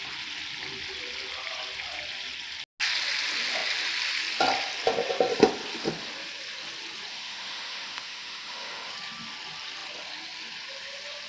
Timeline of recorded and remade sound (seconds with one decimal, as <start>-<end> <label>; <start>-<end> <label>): 0.0-7.1 recorded; 7.1-8.9 remade; 8.9-11.3 recorded